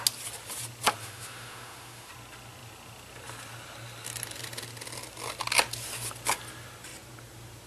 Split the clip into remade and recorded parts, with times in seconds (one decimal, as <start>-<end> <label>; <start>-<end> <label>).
0.0-1.0 recorded; 1.0-2.1 remade; 2.1-7.7 recorded